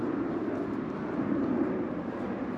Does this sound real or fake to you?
real